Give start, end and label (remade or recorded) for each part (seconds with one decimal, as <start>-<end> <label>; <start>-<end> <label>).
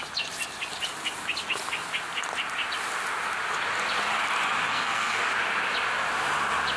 0.0-4.7 recorded; 4.7-5.2 remade; 5.2-6.8 recorded